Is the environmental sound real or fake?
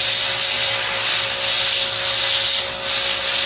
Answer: real